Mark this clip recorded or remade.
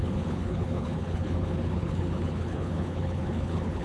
remade